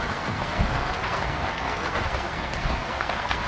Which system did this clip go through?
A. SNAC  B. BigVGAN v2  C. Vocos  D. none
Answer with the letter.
A